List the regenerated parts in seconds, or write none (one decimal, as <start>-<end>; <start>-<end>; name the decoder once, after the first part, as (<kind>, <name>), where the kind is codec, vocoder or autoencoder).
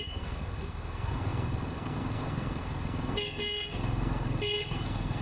0.0-5.2 (codec, SNAC)